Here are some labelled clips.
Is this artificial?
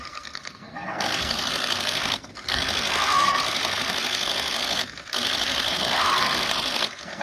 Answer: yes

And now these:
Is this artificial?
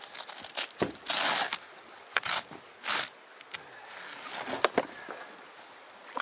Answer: no